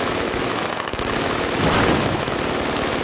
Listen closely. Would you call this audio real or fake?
fake